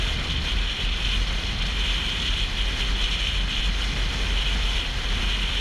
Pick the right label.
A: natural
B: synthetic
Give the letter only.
A